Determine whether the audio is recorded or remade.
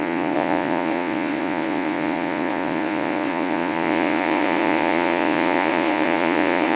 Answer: remade